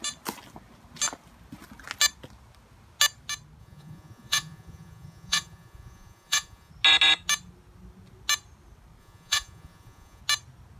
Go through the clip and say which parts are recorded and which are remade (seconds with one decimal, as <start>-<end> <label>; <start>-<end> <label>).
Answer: 0.0-3.6 recorded; 3.6-6.7 remade; 6.7-9.0 recorded; 9.0-10.2 remade; 10.2-10.8 recorded